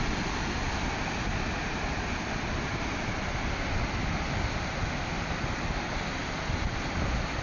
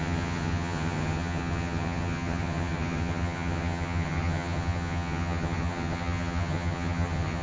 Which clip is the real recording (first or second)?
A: first